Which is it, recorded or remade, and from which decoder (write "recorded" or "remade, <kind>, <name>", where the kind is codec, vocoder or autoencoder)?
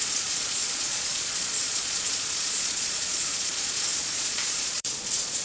remade, vocoder, Vocos